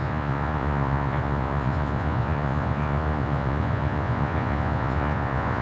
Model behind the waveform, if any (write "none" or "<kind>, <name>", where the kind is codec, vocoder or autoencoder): vocoder, Vocos